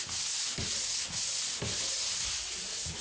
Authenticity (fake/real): real